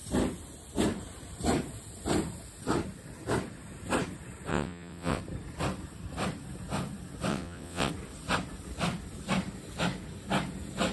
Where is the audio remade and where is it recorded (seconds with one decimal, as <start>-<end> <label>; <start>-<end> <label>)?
0.0-4.5 recorded; 4.5-5.2 remade; 5.2-7.3 recorded; 7.3-7.9 remade; 7.9-10.9 recorded